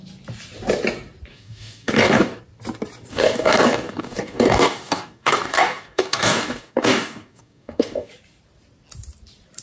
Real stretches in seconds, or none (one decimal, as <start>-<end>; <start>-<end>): 0.0-1.3; 2.4-3.1; 8.1-9.6